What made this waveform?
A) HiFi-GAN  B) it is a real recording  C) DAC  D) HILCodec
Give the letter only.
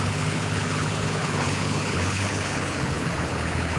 D